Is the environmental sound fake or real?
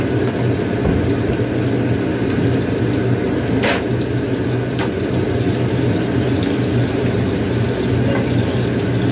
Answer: real